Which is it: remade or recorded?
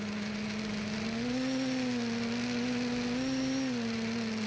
recorded